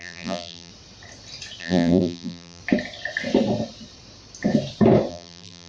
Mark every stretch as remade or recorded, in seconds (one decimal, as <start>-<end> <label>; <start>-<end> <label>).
0.0-0.7 remade; 0.7-1.6 recorded; 1.6-2.6 remade; 2.6-5.1 recorded; 5.1-5.7 remade